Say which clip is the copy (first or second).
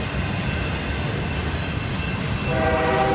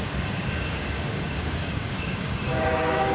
second